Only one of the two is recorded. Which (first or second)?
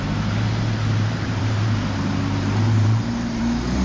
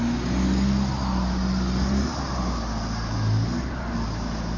second